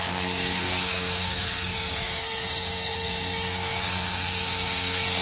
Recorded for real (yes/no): no